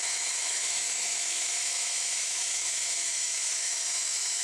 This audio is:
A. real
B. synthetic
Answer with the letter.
B